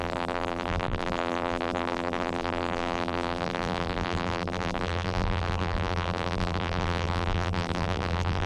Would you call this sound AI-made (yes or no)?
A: yes